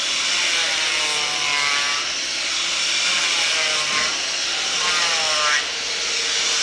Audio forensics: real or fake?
real